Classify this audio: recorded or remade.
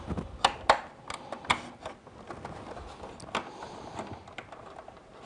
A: recorded